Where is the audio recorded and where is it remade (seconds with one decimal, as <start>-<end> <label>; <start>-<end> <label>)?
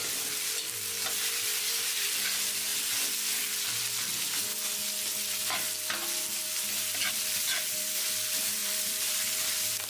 0.0-2.7 remade; 2.7-7.1 recorded; 7.1-9.9 remade